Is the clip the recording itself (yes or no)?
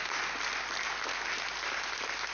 yes